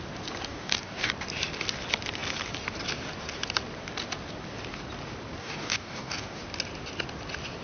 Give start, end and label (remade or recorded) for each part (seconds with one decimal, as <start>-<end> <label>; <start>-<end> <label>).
0.0-0.5 recorded; 0.5-1.1 remade; 1.1-5.4 recorded; 5.4-6.4 remade; 6.4-7.6 recorded